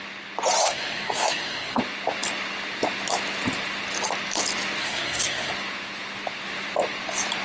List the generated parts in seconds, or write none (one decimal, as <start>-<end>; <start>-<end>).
0.6-1.8; 4.8-5.5